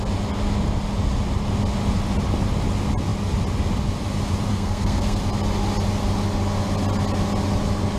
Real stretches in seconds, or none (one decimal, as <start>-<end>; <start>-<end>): 0.0-4.5; 5.2-8.0